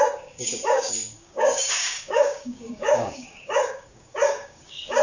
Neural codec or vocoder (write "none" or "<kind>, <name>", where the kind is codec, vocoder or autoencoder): codec, DAC